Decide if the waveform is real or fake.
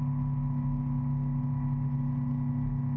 real